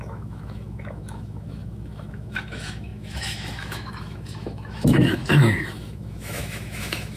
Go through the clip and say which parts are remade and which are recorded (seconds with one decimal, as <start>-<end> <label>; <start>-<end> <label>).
0.0-7.2 remade